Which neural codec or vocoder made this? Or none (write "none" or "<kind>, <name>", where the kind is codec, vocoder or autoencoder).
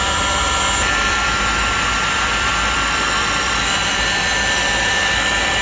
vocoder, BigVGAN v2